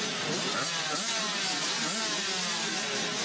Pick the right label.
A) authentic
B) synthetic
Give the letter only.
A